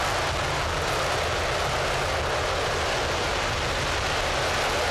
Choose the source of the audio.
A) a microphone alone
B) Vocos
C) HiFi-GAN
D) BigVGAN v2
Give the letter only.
A